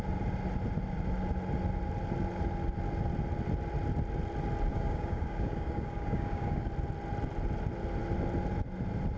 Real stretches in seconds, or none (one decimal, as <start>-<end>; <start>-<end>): 0.0-4.7; 6.7-9.2